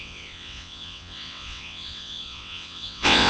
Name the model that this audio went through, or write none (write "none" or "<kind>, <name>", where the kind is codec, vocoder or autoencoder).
vocoder, WaveNeXt